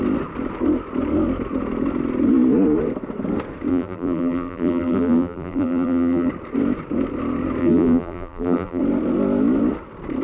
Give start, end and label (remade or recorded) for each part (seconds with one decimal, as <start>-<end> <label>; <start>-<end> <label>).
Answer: 0.0-3.7 recorded; 3.7-6.3 remade; 6.3-7.6 recorded; 7.6-8.8 remade; 8.8-10.2 recorded